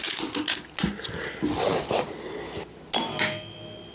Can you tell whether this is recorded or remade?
recorded